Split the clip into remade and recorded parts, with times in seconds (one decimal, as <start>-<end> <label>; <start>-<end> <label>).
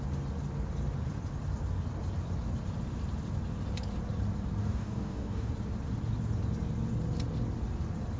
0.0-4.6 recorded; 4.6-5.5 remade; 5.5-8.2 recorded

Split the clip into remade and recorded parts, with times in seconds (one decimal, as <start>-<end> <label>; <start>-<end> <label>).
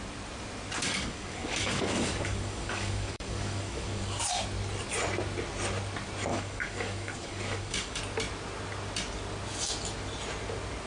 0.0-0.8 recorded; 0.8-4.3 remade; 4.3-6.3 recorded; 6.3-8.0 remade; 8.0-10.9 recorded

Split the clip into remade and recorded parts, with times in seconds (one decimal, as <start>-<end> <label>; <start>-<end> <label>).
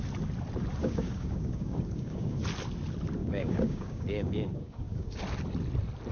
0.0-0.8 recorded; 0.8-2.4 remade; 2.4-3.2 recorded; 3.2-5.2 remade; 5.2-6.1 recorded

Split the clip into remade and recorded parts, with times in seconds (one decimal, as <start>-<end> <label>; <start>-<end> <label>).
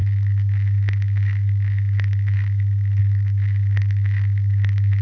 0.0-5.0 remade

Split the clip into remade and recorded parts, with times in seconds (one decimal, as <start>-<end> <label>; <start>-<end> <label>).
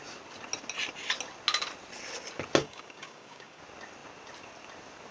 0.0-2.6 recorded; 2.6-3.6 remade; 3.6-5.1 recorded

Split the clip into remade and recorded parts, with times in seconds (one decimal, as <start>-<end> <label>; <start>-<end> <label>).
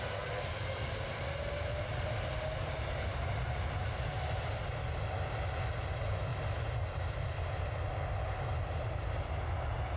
0.0-10.0 recorded